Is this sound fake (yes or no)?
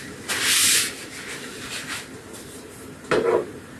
no